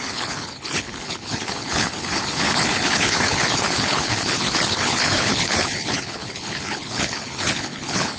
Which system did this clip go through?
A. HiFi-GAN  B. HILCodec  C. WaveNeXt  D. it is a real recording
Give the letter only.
B